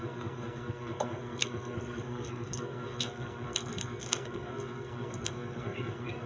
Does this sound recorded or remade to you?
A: remade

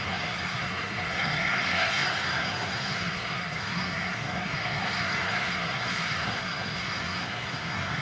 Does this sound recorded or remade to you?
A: remade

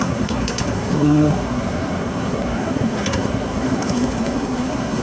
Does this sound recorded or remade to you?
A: remade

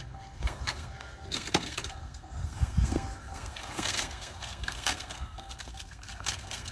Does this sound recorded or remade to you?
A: remade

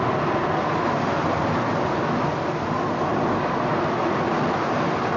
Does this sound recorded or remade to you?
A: recorded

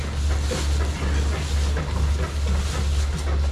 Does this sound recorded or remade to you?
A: recorded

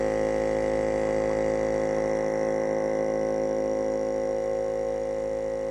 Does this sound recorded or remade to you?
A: recorded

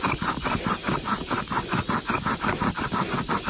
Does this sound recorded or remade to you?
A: recorded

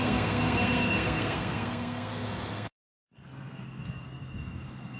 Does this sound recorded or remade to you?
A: remade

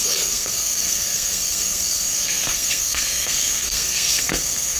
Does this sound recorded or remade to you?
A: remade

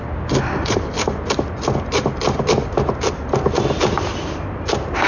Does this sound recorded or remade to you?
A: recorded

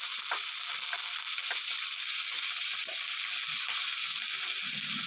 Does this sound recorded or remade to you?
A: recorded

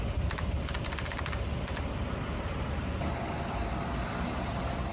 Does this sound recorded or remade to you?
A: recorded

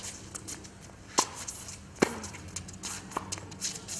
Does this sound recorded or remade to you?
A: recorded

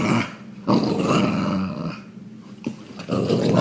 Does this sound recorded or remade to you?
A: recorded